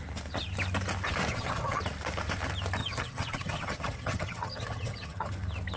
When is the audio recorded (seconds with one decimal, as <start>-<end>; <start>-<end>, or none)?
0.0-1.3; 1.8-2.8; 5.3-5.8